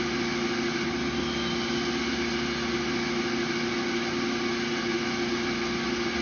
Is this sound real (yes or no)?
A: yes